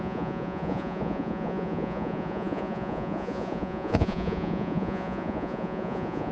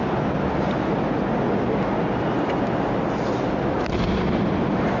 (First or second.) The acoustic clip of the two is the second